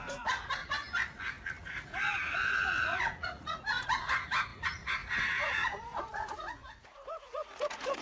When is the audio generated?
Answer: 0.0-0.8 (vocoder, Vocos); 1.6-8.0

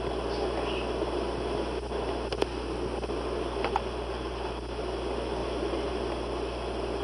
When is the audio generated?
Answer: none

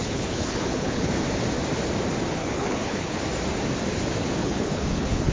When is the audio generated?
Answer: 0.0-1.1 (codec, HILCodec); 2.4-3.2; 4.4-5.3

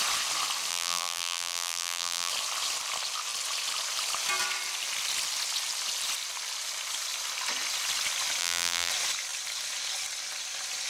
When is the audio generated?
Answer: 0.7-2.3 (vocoder, BigVGAN v2); 8.4-8.9

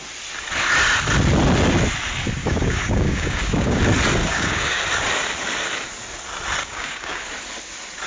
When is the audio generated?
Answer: 2.4-3.8 (codec, DAC); 4.2-4.8; 6.6-7.2

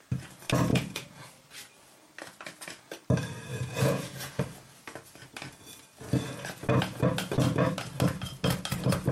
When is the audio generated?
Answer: 0.7-1.3 (vocoder, Vocos); 3.5-4.4

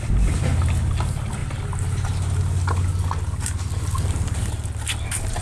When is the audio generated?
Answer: none